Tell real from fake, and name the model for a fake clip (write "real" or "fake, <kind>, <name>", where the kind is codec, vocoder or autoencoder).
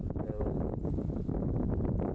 real